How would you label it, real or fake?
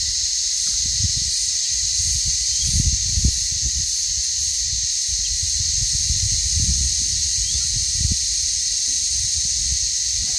real